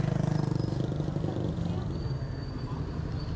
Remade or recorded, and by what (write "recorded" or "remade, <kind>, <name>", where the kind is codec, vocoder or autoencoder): recorded